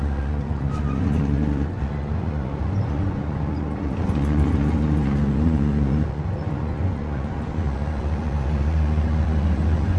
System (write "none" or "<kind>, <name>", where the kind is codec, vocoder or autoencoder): vocoder, Vocos